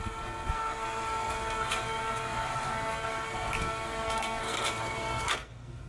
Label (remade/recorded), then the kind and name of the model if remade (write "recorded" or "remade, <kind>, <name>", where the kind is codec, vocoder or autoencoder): remade, codec, SNAC